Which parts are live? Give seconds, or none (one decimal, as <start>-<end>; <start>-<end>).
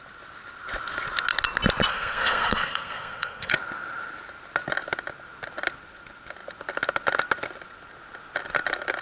0.0-1.9; 3.5-9.0